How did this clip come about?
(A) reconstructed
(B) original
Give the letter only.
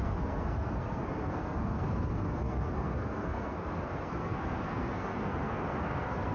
A